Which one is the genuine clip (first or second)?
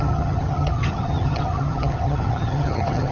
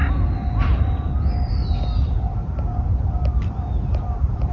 second